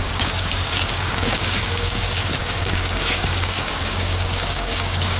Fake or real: fake